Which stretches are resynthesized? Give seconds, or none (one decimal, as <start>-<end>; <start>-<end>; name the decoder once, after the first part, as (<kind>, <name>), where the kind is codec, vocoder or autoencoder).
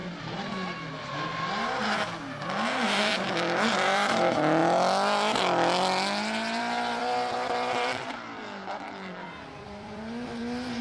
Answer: 7.0-10.4 (vocoder, BigVGAN v2)